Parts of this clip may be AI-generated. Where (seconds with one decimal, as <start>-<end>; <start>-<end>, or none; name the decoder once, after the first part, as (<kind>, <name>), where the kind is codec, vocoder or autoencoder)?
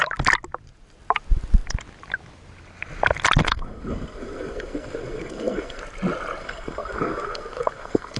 3.4-5.8 (codec, SNAC); 6.4-8.2